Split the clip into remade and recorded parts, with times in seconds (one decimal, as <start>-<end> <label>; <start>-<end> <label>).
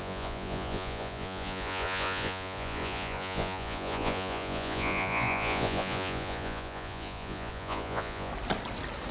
0.0-8.3 remade; 8.3-9.1 recorded